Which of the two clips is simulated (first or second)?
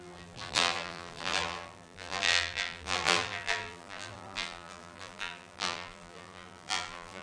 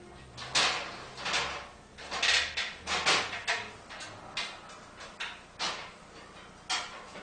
first